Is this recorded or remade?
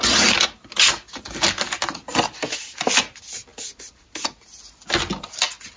recorded